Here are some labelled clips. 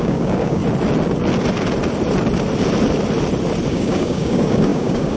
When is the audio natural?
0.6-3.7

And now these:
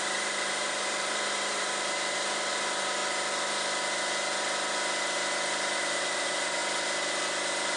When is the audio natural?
3.0-5.8; 6.6-7.8